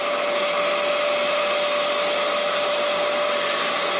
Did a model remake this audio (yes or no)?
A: no